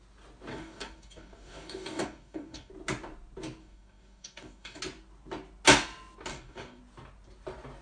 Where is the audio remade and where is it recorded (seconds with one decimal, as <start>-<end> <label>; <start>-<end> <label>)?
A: 0.0-0.5 recorded; 0.5-2.7 remade; 2.7-3.6 recorded; 3.6-4.8 remade; 4.8-6.3 recorded; 6.3-6.8 remade; 6.8-7.8 recorded